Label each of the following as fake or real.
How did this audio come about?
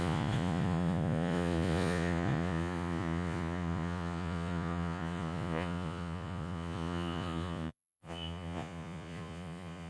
fake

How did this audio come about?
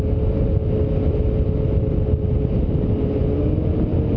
real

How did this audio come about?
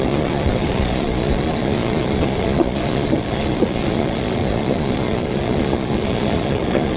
fake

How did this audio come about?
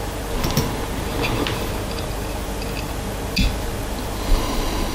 real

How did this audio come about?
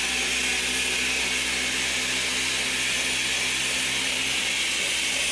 real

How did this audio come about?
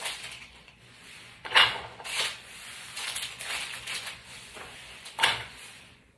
fake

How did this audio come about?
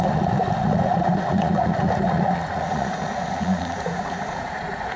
fake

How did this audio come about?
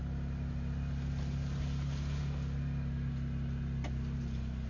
real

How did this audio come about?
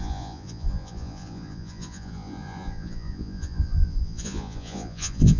fake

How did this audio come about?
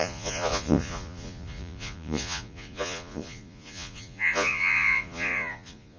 fake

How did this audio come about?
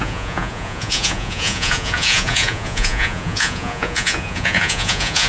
fake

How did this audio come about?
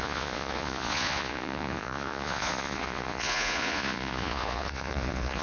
fake